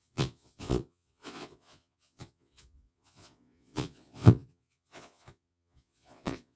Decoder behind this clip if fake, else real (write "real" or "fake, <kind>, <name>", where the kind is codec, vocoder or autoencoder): fake, vocoder, Vocos